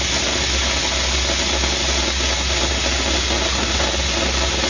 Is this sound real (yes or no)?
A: yes